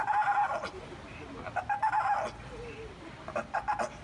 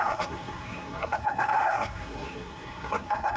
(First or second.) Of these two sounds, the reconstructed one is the second